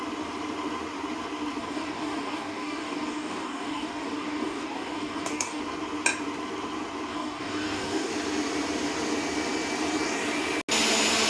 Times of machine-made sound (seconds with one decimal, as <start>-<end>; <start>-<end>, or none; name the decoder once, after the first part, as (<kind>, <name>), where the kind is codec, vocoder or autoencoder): 1.6-5.6 (codec, DAC); 7.1-8.1